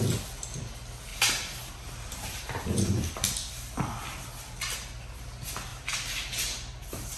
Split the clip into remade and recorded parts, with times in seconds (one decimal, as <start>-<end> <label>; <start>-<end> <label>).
0.0-1.1 recorded; 1.1-3.0 remade; 3.0-5.7 recorded; 5.7-7.2 remade